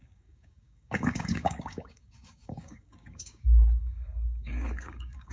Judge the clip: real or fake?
fake